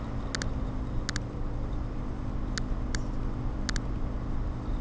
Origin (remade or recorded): recorded